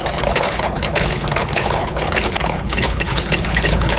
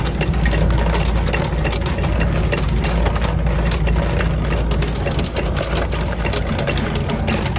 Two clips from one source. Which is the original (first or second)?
second